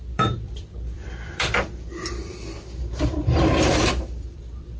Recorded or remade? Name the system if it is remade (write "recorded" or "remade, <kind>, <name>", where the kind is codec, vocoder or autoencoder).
remade, vocoder, BigVGAN v2